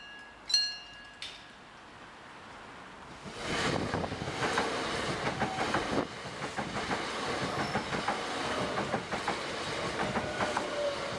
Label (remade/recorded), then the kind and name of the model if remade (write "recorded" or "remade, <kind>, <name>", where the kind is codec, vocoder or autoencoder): recorded